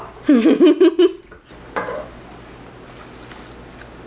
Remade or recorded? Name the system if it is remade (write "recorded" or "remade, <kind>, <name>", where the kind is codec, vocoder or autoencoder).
recorded